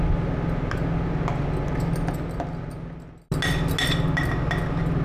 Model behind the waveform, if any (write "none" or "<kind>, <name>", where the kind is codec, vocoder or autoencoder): none